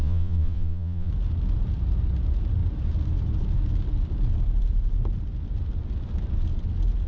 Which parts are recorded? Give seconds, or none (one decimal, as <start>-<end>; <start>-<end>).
1.1-7.1